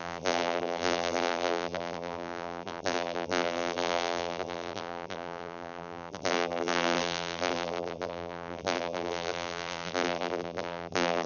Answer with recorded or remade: remade